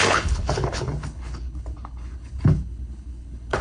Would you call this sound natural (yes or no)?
no